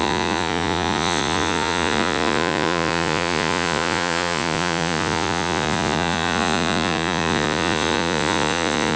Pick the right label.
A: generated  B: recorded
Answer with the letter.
A